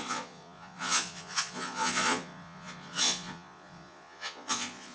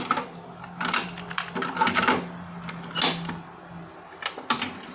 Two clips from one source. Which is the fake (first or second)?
first